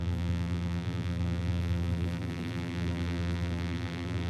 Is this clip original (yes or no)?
no